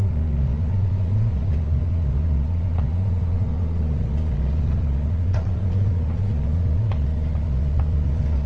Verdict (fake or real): fake